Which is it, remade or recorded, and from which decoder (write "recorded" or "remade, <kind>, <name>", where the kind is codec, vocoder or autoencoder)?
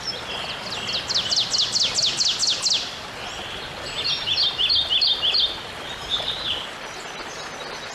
recorded